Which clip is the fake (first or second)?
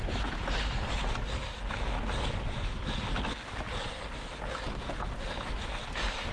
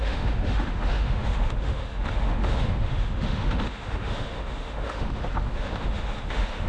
second